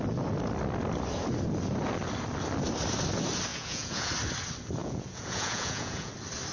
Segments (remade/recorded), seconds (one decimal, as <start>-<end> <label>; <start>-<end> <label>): 0.0-3.5 recorded; 3.5-4.1 remade; 4.1-4.8 recorded; 4.8-6.1 remade; 6.1-6.5 recorded

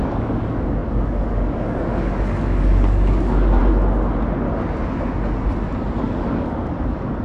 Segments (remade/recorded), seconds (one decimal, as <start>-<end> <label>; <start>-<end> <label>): 0.0-3.6 remade; 3.6-6.0 recorded; 6.0-7.2 remade

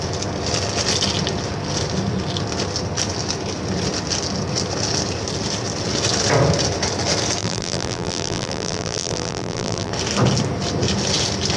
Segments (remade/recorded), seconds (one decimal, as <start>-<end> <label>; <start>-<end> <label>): 0.0-7.4 recorded; 7.4-9.9 remade; 9.9-11.6 recorded

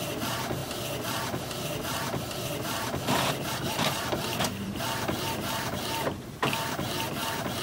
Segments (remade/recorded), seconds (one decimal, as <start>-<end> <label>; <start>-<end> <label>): 0.0-7.6 remade

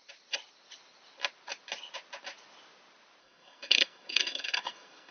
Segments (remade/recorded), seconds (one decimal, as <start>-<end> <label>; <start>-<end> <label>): 0.0-3.2 recorded; 3.2-5.1 remade

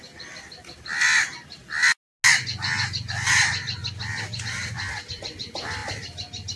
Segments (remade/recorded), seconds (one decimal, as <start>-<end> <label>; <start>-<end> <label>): 0.0-1.6 remade; 1.6-3.3 recorded; 3.3-5.8 remade; 5.8-6.6 recorded